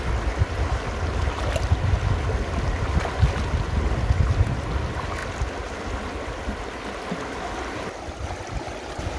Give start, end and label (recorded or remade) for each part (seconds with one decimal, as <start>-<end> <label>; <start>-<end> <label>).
0.0-9.2 recorded